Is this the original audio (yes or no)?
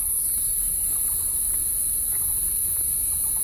yes